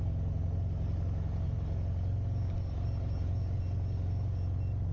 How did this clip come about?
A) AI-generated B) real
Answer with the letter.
B